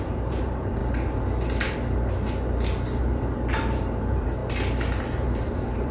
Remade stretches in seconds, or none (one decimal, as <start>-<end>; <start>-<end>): 0.0-0.8; 3.0-4.4; 5.1-5.9